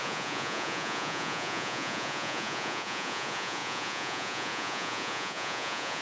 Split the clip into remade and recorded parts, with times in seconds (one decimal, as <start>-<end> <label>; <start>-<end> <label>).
0.0-6.0 remade